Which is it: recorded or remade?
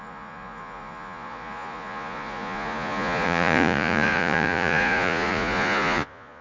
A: remade